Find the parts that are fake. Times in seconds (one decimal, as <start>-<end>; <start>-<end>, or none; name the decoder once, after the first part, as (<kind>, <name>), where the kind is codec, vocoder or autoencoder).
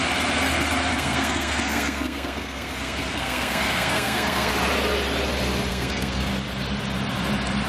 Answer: 0.9-4.5 (codec, SNAC); 5.7-6.3